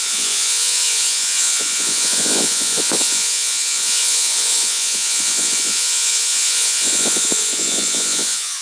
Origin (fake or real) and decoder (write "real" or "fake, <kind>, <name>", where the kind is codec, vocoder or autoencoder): fake, vocoder, Vocos